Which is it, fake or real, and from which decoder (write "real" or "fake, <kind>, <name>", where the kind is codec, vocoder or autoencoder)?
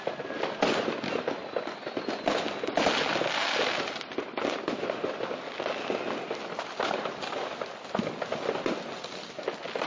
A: real